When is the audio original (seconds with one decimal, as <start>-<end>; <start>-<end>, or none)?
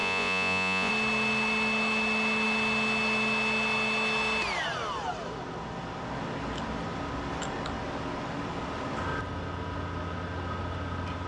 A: 0.9-11.3